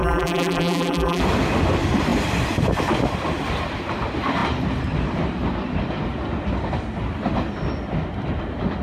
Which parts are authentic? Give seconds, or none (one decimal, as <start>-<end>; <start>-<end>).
1.2-8.8